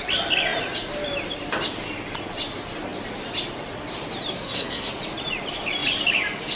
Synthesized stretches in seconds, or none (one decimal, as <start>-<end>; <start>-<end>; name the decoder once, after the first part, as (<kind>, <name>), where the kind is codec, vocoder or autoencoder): 4.3-4.9 (codec, SNAC)